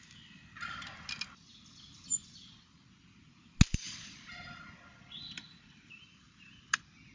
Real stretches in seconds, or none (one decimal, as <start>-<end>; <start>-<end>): 0.0-7.1